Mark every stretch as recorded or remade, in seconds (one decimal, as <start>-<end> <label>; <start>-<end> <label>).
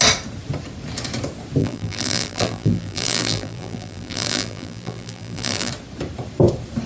0.0-1.6 recorded; 1.6-5.7 remade; 5.7-6.9 recorded